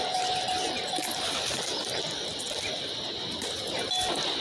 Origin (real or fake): real